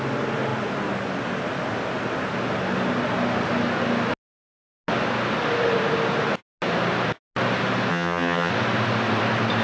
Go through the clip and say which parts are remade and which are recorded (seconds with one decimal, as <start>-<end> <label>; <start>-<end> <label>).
0.0-7.9 recorded; 7.9-8.5 remade; 8.5-9.6 recorded